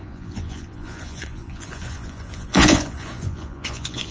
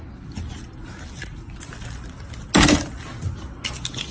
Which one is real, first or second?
second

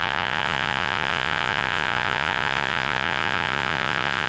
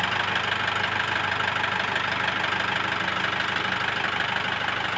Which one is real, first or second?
second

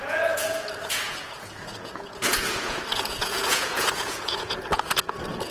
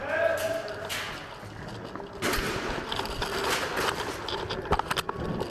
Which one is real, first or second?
second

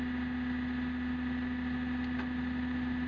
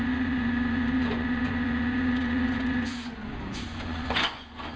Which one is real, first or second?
first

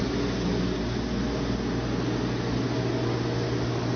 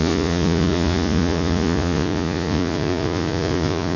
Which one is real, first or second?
first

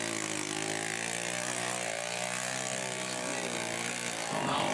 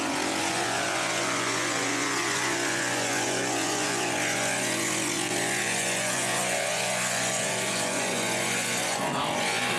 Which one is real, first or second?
first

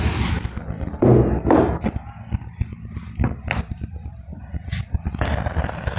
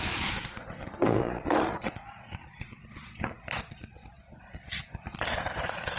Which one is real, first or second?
first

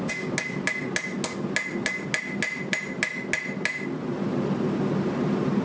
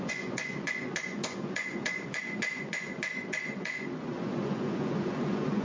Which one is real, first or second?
first